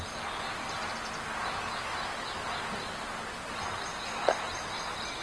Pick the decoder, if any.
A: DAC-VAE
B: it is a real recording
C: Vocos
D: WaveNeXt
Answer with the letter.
B